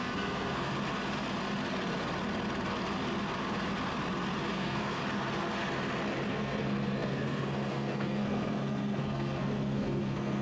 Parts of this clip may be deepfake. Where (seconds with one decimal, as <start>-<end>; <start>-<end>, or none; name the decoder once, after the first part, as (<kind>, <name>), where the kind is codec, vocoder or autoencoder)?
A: 0.0-0.7 (codec, SNAC); 4.5-5.0; 6.3-10.4